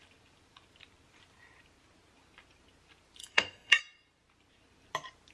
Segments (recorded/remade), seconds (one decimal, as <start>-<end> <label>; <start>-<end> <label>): 0.0-3.2 recorded; 3.2-3.8 remade; 3.8-5.3 recorded